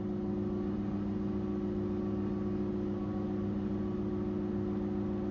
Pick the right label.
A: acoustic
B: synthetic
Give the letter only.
A